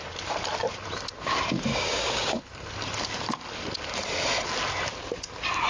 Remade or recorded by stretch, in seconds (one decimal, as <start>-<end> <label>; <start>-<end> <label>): 0.0-1.7 recorded; 1.7-2.4 remade; 2.4-5.7 recorded